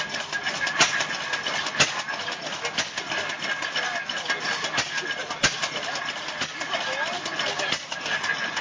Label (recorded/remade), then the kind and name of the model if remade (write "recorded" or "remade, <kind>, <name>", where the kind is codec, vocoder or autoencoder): recorded